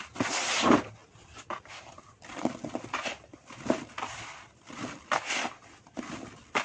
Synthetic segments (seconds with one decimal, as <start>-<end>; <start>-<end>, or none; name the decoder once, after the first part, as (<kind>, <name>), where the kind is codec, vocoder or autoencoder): none